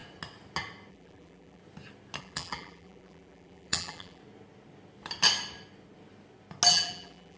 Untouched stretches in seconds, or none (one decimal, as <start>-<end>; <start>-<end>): 0.0-0.9; 1.6-2.2; 4.2-6.7